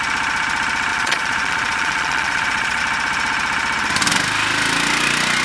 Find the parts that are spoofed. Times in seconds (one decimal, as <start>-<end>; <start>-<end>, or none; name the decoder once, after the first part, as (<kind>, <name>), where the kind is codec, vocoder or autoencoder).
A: 0.9-2.8 (vocoder, Vocos)